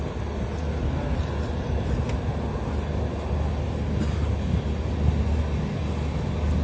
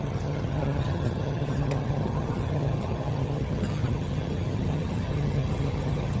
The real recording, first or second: first